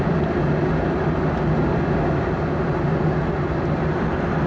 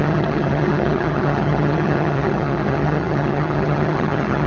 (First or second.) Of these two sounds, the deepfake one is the second